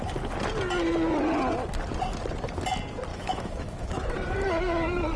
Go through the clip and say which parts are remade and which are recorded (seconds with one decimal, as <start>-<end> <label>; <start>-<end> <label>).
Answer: 0.0-3.1 recorded; 3.1-4.1 remade; 4.1-5.2 recorded